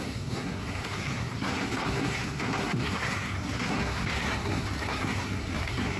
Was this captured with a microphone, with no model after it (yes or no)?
no